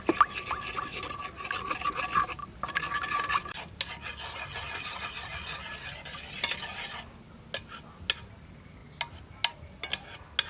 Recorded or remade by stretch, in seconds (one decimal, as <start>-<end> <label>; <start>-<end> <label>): 0.0-10.5 recorded